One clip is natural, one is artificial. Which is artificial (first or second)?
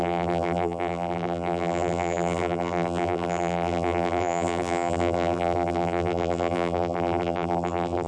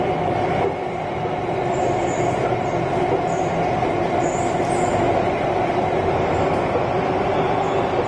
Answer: first